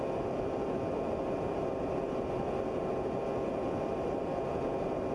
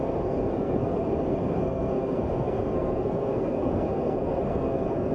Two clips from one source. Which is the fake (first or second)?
second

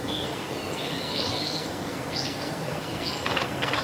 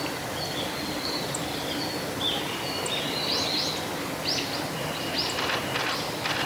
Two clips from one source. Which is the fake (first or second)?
first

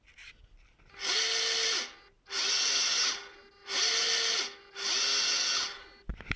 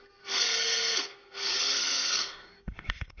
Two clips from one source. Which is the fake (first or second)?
second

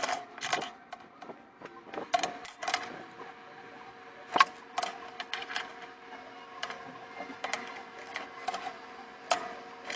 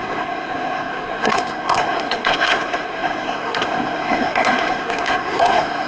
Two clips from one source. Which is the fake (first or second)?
second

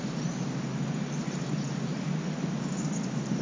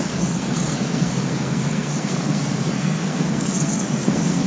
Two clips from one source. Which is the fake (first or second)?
second